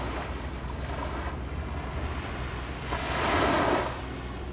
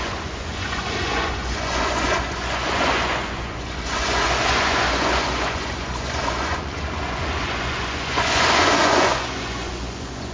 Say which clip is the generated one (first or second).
second